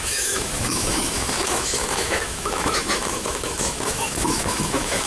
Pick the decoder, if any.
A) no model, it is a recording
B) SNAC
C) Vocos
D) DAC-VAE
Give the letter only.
D